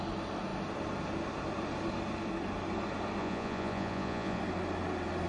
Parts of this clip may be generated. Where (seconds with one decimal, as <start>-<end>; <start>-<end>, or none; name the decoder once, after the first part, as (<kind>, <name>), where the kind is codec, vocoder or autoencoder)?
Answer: 3.2-4.4 (vocoder, Vocos)